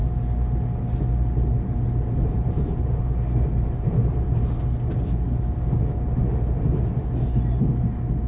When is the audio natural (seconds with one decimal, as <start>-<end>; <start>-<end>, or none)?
0.0-8.3